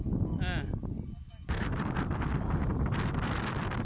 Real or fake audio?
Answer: real